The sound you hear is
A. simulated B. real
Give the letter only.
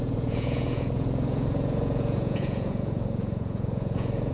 A